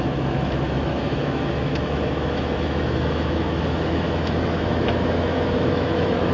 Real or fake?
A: fake